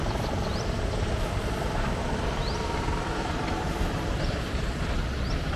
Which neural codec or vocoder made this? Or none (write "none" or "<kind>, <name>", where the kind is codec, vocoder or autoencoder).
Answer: vocoder, BigVGAN v2